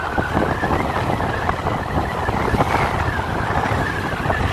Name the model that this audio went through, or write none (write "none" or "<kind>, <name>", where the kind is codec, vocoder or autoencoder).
none